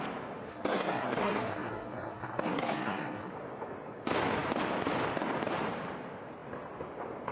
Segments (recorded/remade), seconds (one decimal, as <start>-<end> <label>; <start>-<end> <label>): 0.0-0.5 recorded; 0.5-3.3 remade; 3.3-7.3 recorded